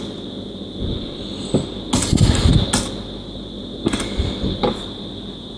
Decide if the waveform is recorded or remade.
recorded